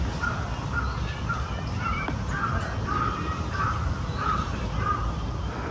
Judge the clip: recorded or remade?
remade